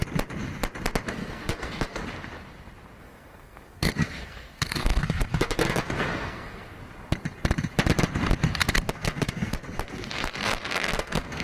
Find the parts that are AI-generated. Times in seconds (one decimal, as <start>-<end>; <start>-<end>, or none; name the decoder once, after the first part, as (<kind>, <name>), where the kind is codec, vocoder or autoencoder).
1.1-2.0 (codec, SNAC); 3.0-6.8; 8.9-11.4